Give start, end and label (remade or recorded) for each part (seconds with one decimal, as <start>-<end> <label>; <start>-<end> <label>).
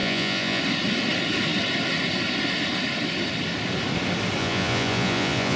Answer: 0.0-0.6 remade; 0.6-4.4 recorded; 4.4-5.6 remade